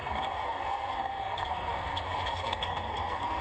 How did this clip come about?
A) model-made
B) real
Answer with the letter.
A